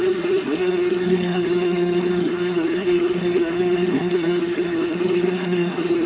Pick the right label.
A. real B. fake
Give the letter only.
B